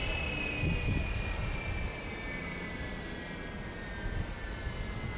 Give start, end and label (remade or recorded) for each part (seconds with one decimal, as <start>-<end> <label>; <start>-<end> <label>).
0.0-5.2 recorded